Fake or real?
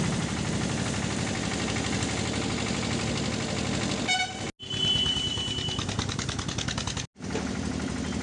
real